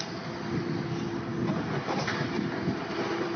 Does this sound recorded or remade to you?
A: recorded